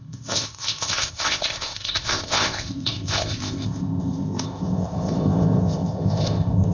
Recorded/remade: remade